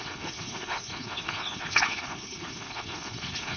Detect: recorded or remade remade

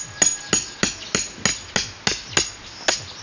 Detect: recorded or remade recorded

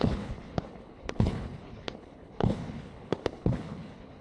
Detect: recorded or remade remade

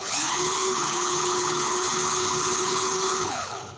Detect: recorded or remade remade